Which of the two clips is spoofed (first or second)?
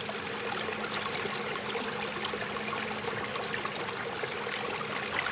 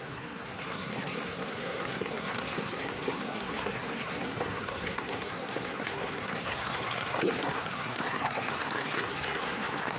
second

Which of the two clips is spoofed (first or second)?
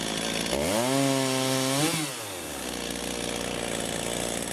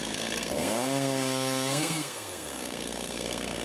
second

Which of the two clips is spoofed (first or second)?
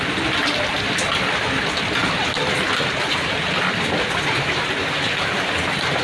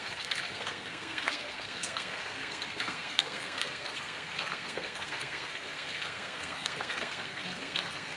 second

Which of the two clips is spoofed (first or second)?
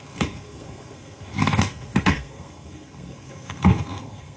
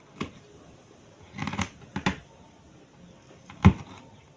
first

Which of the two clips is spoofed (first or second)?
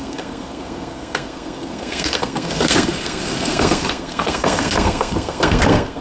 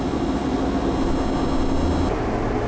first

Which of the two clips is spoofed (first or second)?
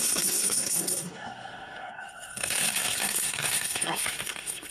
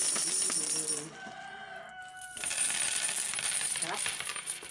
first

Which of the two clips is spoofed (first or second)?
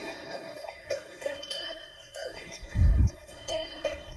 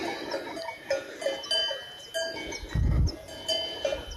first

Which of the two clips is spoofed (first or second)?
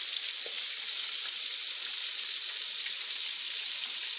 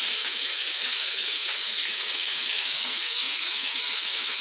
second